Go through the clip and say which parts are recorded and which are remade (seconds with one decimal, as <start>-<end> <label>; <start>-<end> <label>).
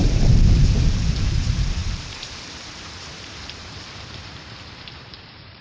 0.0-5.6 remade